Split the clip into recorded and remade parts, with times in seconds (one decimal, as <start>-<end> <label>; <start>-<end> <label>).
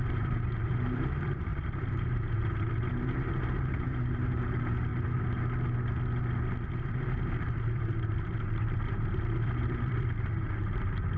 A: 0.0-4.9 remade; 4.9-6.7 recorded; 6.7-11.2 remade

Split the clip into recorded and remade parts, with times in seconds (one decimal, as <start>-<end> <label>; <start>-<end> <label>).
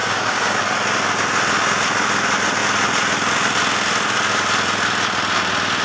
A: 0.0-0.6 remade; 0.6-5.8 recorded